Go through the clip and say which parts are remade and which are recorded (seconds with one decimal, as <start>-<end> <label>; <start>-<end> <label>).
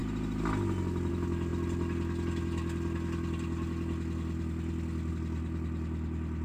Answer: 0.0-6.4 recorded